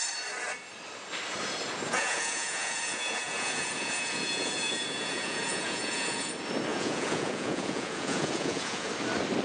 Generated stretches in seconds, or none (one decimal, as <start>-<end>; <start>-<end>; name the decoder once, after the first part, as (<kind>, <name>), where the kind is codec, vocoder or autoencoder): 1.9-6.3 (vocoder, Vocos); 6.7-8.9